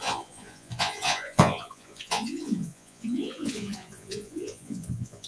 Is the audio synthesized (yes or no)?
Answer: yes